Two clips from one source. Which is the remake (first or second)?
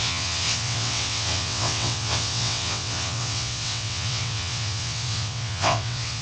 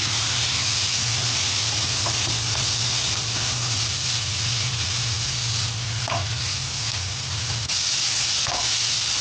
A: first